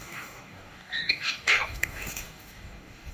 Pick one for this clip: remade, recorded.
remade